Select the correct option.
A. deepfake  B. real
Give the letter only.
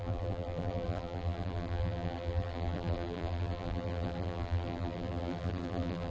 A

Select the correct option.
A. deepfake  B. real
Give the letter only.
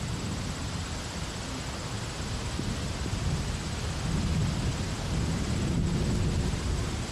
B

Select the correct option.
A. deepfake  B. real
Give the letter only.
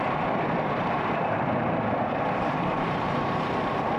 A